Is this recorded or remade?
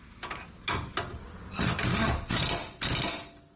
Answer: recorded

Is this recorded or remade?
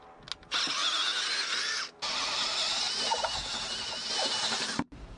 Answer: recorded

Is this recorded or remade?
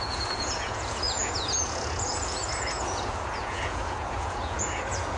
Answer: remade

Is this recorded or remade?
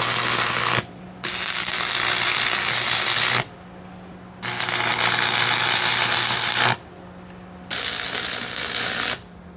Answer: recorded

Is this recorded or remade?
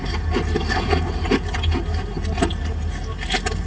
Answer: recorded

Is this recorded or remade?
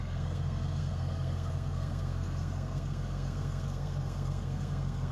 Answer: remade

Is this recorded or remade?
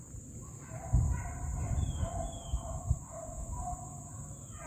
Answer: remade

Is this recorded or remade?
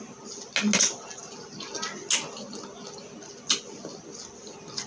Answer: recorded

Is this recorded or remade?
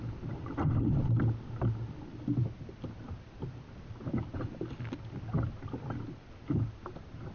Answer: recorded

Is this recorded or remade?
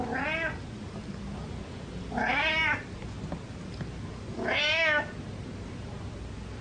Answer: recorded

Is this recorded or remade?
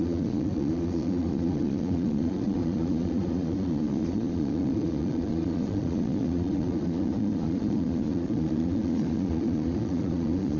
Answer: remade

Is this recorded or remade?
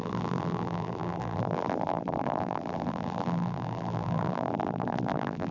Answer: remade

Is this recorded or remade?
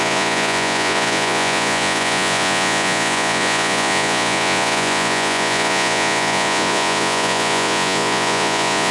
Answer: remade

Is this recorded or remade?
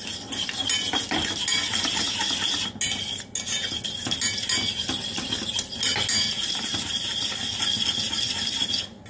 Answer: recorded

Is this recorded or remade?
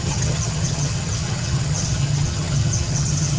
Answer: remade